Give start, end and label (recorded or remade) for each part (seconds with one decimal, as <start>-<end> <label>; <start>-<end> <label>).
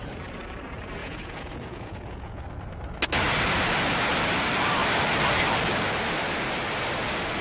0.0-1.0 recorded; 1.0-2.4 remade; 2.4-7.4 recorded